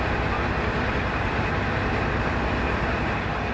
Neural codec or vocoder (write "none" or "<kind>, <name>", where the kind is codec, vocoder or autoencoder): none